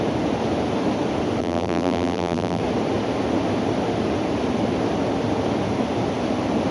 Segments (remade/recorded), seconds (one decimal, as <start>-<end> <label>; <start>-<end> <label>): 0.0-1.4 recorded; 1.4-2.6 remade; 2.6-6.7 recorded